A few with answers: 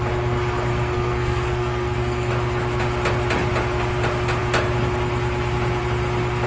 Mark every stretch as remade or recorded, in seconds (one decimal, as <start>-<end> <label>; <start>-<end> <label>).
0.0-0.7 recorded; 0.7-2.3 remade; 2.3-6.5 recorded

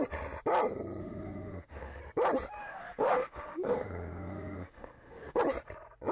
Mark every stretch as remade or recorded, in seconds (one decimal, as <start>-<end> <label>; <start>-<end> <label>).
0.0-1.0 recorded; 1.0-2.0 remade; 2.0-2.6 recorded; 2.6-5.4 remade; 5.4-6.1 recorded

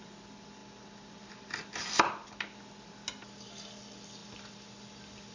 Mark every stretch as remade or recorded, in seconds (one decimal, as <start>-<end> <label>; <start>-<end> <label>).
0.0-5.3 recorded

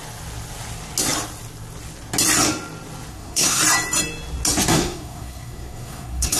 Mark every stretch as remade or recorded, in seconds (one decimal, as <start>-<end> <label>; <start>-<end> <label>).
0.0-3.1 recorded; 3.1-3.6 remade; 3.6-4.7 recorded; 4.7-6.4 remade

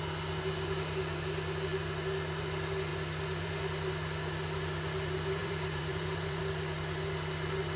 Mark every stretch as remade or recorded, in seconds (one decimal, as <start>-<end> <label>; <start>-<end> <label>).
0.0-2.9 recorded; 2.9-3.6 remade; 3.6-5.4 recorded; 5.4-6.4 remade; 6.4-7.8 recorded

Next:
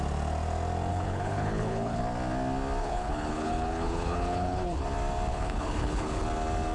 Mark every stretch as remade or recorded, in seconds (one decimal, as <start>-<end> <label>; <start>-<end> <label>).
0.0-0.9 recorded; 0.9-2.0 remade; 2.0-2.8 recorded; 2.8-4.8 remade; 4.8-5.3 recorded; 5.3-6.2 remade; 6.2-6.7 recorded

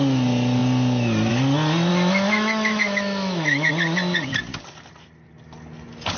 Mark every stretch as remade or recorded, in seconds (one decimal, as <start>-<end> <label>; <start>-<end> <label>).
0.0-1.9 recorded; 1.9-3.7 remade; 3.7-6.2 recorded

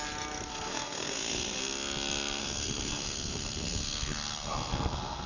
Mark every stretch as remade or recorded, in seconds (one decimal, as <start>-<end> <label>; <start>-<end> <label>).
0.0-0.5 recorded; 0.5-1.6 remade; 1.6-2.4 recorded; 2.4-5.3 remade